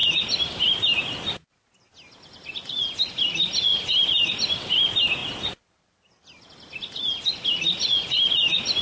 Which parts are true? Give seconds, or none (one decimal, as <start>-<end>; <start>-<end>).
0.7-3.7; 4.3-5.2; 6.5-8.8